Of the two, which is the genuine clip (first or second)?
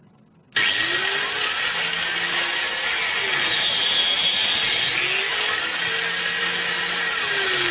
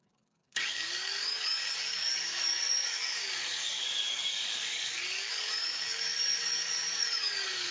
first